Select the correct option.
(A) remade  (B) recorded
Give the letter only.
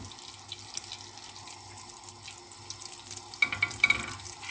B